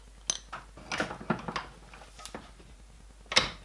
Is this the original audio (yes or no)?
yes